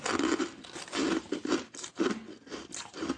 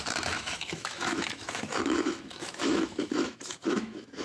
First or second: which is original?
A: first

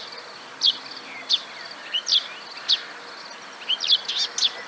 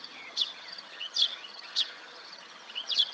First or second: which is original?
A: first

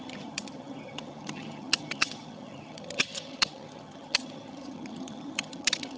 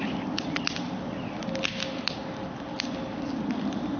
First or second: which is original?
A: second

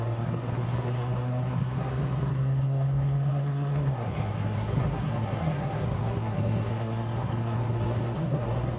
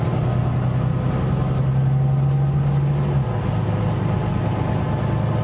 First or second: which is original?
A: second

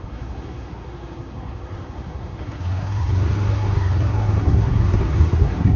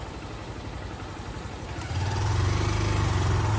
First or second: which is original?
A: second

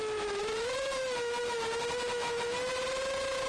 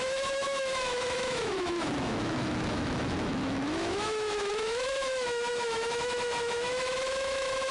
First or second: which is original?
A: first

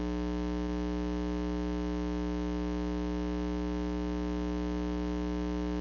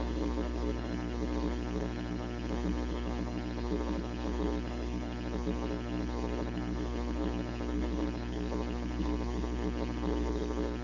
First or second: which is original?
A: first